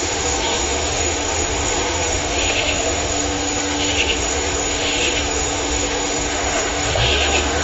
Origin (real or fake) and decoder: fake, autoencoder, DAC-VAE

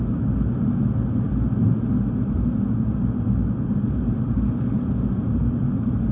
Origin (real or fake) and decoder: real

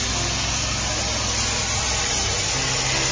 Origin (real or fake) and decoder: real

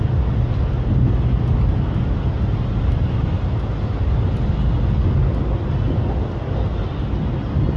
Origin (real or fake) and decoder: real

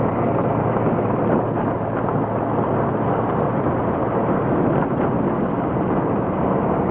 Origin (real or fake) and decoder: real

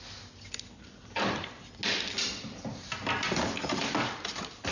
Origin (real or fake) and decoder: real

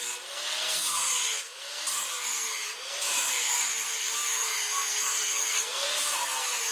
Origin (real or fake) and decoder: fake, codec, SNAC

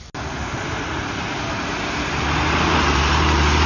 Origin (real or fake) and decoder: real